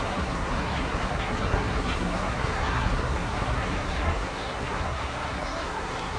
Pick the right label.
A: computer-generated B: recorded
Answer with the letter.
A